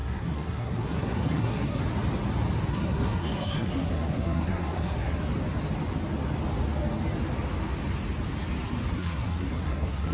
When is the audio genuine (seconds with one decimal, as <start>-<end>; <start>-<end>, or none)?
1.8-2.7; 5.2-8.9